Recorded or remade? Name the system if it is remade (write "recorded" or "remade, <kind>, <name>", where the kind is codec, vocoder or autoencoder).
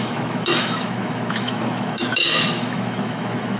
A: remade, autoencoder, DAC-VAE